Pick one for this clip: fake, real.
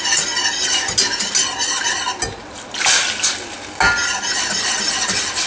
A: real